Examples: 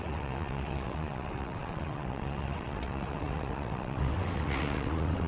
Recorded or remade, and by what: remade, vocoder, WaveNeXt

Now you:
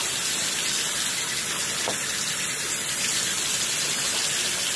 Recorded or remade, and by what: recorded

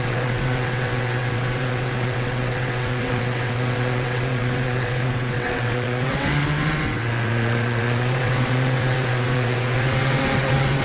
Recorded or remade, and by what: remade, vocoder, WaveNeXt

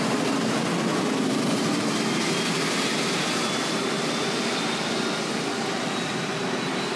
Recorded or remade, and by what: recorded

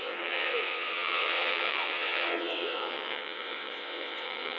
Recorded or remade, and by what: remade, vocoder, WaveNeXt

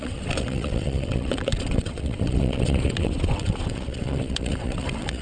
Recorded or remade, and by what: remade, vocoder, WaveNeXt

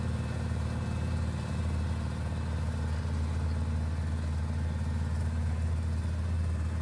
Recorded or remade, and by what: recorded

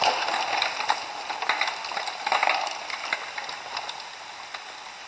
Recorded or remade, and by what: recorded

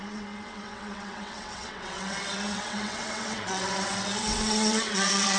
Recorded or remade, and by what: remade, vocoder, WaveNeXt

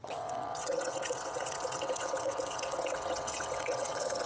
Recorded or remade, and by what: remade, vocoder, WaveNeXt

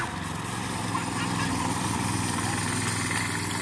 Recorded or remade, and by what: recorded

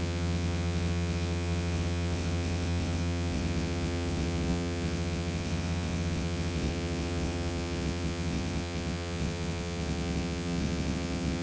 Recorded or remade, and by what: remade, vocoder, WaveNeXt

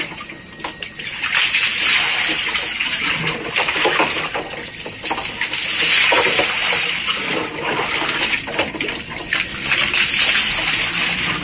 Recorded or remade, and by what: recorded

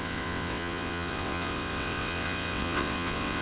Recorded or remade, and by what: remade, vocoder, WaveNeXt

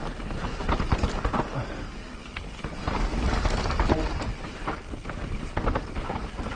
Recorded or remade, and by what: recorded